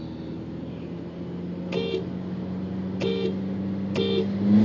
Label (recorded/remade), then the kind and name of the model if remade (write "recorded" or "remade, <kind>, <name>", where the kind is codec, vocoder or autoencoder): recorded